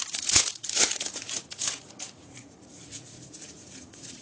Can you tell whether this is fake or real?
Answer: fake